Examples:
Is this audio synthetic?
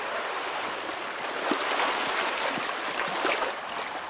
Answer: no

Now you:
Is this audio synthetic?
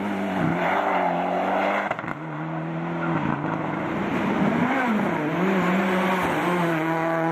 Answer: no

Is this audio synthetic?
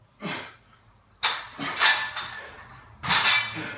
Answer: no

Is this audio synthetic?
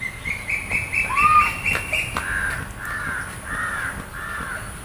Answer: no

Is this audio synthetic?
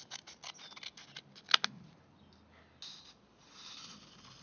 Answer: no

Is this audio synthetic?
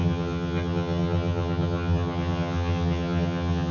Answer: yes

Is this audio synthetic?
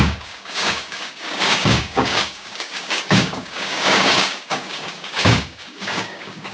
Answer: yes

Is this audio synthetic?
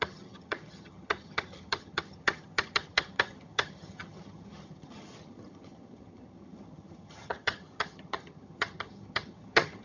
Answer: yes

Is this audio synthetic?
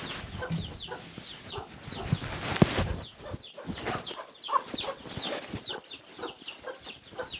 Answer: no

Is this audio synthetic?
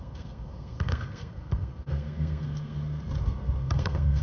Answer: yes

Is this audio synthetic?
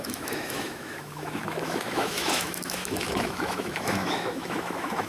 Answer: yes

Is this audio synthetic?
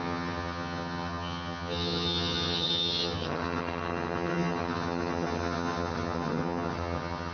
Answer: yes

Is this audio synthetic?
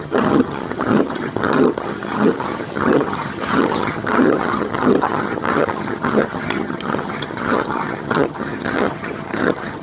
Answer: yes